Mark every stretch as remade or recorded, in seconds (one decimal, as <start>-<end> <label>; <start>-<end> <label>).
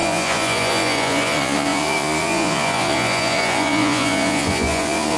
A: 0.0-5.2 remade